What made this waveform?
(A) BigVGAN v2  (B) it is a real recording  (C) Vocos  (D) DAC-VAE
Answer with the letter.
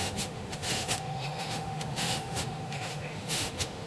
D